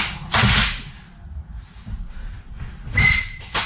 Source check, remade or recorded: recorded